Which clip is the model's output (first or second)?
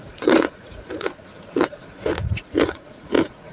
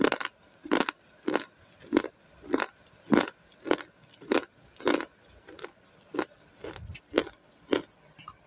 first